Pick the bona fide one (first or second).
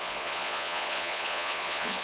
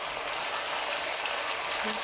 second